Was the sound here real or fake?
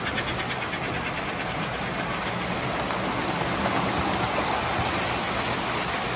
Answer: real